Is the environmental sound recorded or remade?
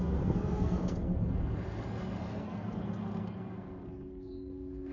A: remade